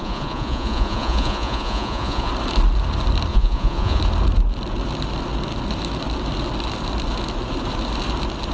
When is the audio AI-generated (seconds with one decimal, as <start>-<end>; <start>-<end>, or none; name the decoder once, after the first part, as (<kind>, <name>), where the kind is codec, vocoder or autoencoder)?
0.0-2.3 (vocoder, Vocos); 3.3-4.0